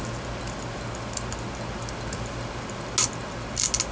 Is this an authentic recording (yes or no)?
yes